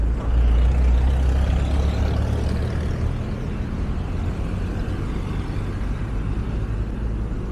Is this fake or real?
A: real